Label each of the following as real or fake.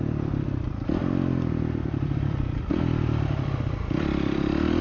fake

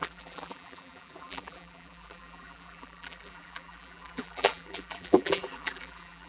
fake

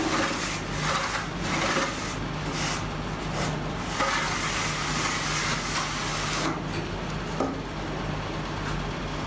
real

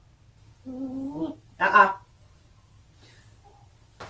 real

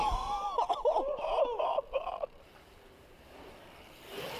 fake